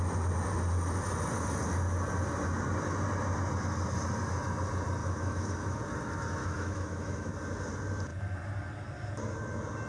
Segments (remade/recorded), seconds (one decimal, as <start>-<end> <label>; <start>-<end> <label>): 0.0-5.0 recorded; 5.0-5.8 remade; 5.8-6.4 recorded; 6.4-7.3 remade; 7.3-9.9 recorded